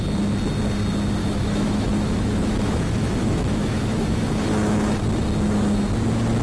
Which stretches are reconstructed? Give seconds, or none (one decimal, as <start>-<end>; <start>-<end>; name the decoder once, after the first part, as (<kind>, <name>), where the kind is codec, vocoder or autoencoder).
1.2-5.0 (autoencoder, DAC-VAE)